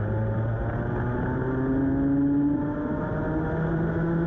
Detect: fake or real real